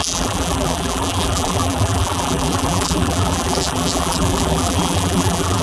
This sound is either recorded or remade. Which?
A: remade